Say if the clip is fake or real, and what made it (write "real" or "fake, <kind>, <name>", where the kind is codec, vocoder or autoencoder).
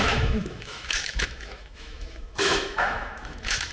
fake, autoencoder, DAC-VAE